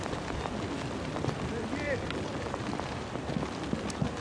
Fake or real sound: real